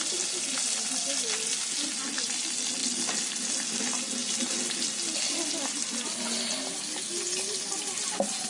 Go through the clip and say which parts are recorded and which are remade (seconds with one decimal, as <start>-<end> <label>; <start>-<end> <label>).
0.0-8.5 recorded